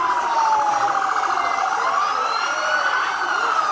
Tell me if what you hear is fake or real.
real